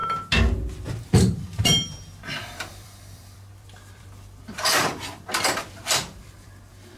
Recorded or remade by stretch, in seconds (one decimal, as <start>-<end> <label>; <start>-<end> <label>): 0.0-0.7 recorded; 0.7-7.0 remade

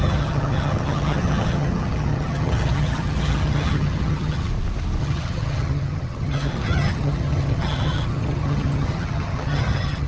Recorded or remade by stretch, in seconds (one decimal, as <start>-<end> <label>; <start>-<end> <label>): 0.0-4.5 remade; 4.5-5.0 recorded; 5.0-10.1 remade

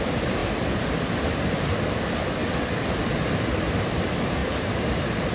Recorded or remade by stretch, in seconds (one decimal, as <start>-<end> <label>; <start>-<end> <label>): 0.0-4.4 recorded; 4.4-5.3 remade

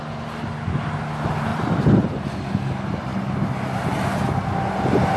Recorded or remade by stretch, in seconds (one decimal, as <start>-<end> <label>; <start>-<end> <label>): 0.0-1.5 recorded; 1.5-2.5 remade; 2.5-5.2 recorded